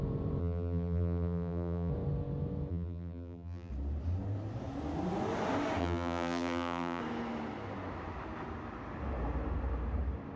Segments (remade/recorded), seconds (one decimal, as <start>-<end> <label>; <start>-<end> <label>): 0.0-0.4 recorded; 0.4-1.9 remade; 1.9-2.7 recorded; 2.7-3.7 remade; 3.7-5.8 recorded; 5.8-7.0 remade; 7.0-10.4 recorded